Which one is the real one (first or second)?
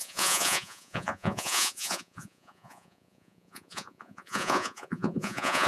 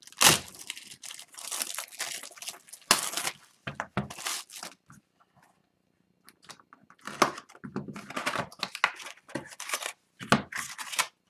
second